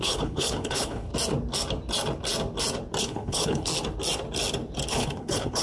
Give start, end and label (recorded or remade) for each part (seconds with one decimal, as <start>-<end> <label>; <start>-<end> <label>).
0.0-1.1 remade; 1.1-3.0 recorded; 3.0-3.7 remade; 3.7-4.9 recorded; 4.9-5.6 remade